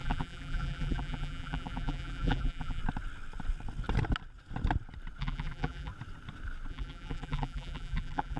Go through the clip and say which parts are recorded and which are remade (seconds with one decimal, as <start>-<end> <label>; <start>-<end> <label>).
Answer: 0.0-2.8 remade; 2.8-5.2 recorded; 5.2-5.9 remade; 5.9-6.7 recorded; 6.7-8.4 remade